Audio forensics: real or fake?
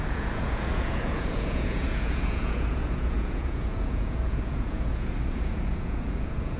fake